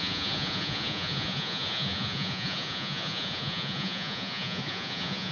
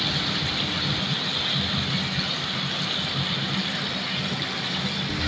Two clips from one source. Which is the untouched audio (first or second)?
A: second